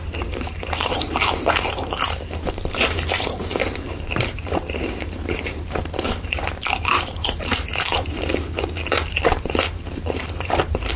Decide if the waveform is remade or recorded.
remade